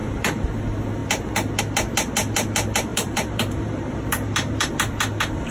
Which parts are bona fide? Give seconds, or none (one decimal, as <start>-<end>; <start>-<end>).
0.5-2.9; 4.7-5.5